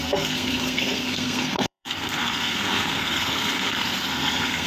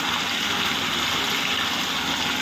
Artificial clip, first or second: first